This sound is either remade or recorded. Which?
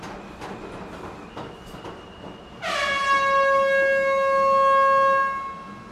recorded